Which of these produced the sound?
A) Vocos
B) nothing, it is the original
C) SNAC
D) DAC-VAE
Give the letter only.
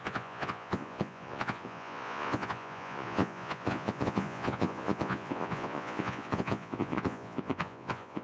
A